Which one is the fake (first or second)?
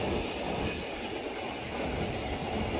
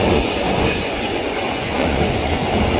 second